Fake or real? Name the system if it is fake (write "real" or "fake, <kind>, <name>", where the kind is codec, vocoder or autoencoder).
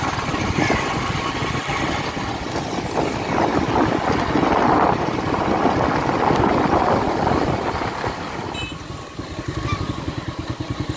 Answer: real